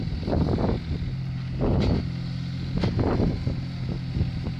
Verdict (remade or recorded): recorded